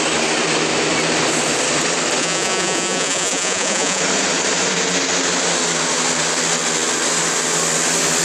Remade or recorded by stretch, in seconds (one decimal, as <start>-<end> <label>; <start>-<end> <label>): 0.0-2.2 recorded; 2.2-4.0 remade; 4.0-8.2 recorded